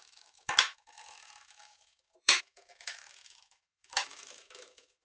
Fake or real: fake